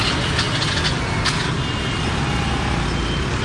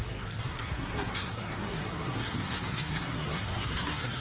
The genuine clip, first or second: first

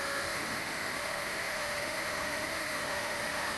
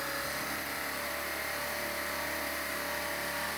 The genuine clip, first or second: second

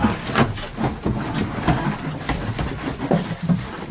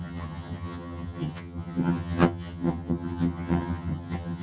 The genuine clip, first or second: first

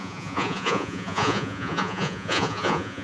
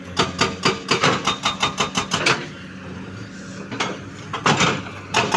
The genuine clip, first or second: second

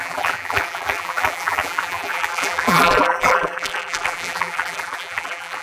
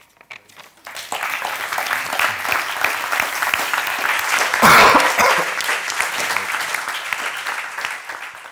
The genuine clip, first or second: second